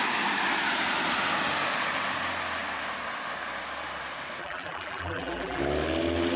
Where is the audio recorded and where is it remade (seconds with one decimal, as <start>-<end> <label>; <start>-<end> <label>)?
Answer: 0.0-4.4 recorded; 4.4-5.6 remade; 5.6-6.4 recorded

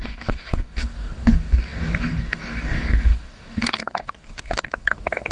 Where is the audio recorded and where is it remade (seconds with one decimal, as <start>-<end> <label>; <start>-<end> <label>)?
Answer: 0.0-5.3 remade

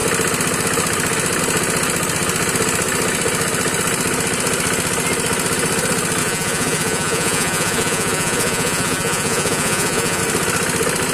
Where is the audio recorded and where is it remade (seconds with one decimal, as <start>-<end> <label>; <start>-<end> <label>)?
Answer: 0.0-6.2 recorded; 6.2-10.2 remade; 10.2-11.1 recorded

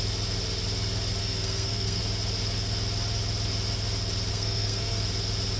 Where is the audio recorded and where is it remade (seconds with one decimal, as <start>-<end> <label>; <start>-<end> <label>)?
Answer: 0.0-1.2 recorded; 1.2-2.0 remade; 2.0-4.3 recorded; 4.3-5.0 remade; 5.0-5.6 recorded

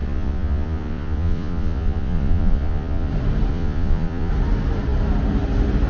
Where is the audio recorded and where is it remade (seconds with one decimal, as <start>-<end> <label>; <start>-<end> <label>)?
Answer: 0.0-3.1 remade; 3.1-3.5 recorded; 3.5-4.3 remade; 4.3-5.9 recorded